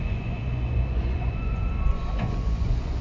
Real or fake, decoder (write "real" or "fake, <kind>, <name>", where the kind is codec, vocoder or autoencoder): fake, vocoder, Vocos